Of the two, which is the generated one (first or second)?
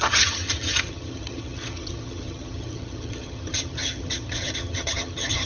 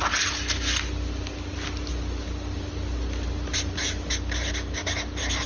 first